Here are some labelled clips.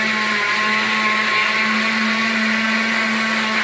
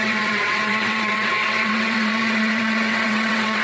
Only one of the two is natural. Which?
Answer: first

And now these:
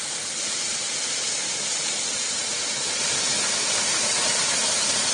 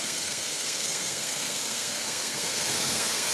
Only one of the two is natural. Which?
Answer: first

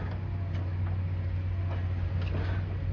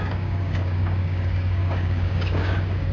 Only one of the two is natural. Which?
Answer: first